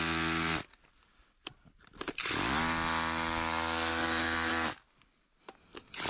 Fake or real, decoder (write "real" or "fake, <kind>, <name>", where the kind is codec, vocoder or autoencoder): real